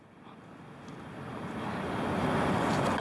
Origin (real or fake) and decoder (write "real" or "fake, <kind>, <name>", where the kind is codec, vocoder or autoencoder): real